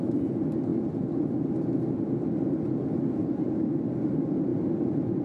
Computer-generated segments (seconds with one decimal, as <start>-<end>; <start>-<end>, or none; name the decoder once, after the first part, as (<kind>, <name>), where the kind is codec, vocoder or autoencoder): none